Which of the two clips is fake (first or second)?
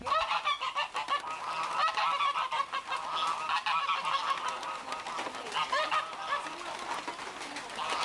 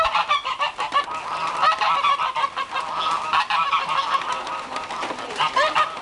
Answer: second